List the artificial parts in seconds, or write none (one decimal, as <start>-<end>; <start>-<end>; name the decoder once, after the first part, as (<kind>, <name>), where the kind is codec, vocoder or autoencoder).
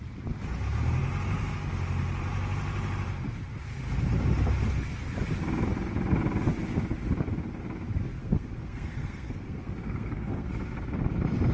8.2-10.5 (codec, SNAC)